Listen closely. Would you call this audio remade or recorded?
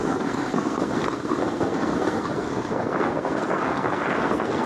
remade